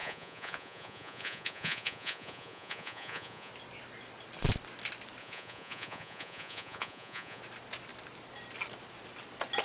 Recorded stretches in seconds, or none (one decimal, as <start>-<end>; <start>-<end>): 3.5-5.2; 7.4-9.6